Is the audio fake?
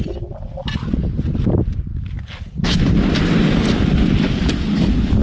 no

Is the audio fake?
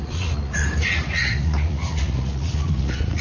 yes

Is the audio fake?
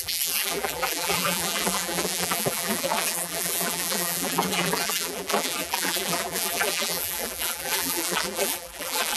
yes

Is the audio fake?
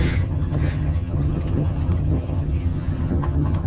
yes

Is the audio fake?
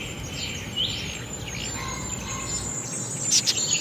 no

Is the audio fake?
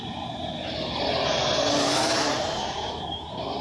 yes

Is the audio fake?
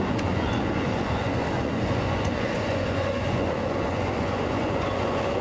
yes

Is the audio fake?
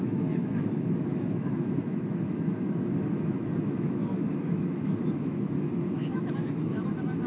yes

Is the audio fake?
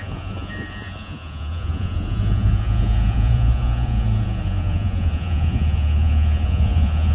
yes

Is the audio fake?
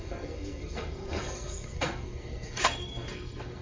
yes